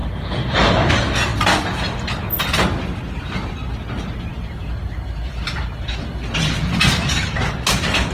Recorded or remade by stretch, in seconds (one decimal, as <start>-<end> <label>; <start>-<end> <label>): 0.0-8.1 recorded